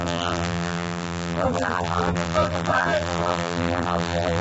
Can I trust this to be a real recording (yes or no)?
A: no